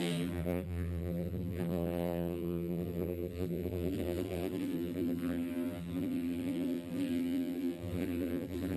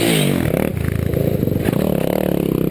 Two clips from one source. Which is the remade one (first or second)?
first